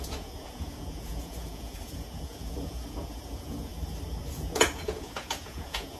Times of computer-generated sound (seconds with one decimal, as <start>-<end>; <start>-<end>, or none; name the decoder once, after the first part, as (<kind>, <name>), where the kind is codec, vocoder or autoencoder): 0.0-3.7 (vocoder, Vocos); 4.3-6.0